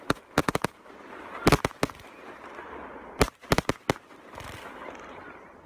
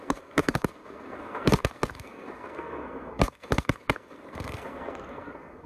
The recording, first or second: first